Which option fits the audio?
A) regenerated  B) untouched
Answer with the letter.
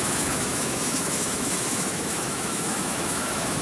A